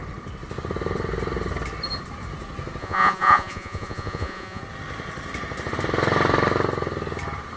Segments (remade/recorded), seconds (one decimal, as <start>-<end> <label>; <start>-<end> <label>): 0.0-2.8 recorded; 2.8-4.6 remade; 4.6-7.6 recorded